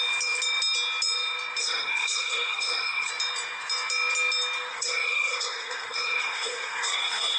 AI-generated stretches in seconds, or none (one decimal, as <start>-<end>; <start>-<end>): 1.6-3.1; 4.7-7.4